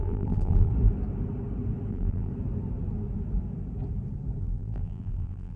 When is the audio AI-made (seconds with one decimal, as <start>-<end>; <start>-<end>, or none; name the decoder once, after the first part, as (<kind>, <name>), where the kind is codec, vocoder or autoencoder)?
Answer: 0.0-0.7 (vocoder, BigVGAN v2); 1.9-2.3; 4.4-5.6